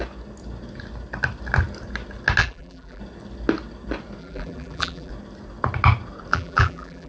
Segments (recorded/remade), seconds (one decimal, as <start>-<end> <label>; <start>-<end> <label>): 0.0-2.4 recorded; 2.4-3.0 remade; 3.0-4.2 recorded; 4.2-5.1 remade; 5.1-6.3 recorded; 6.3-7.1 remade